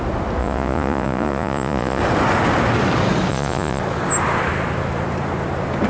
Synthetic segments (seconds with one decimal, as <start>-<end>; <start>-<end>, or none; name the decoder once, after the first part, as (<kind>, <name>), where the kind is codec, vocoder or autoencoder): 0.4-2.0 (vocoder, Vocos); 3.3-3.8

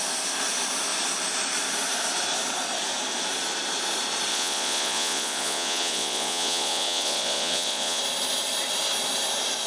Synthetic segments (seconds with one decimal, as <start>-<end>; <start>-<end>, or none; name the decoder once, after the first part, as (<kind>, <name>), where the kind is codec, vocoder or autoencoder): 4.3-8.0 (vocoder, Vocos)